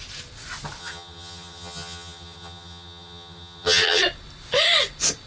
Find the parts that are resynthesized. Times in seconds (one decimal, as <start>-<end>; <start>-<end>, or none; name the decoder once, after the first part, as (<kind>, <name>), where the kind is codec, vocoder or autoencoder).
0.8-4.0 (vocoder, HiFi-GAN)